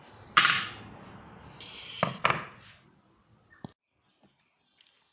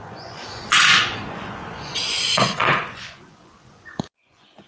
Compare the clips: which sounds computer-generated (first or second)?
second